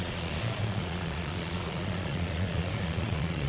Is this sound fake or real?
fake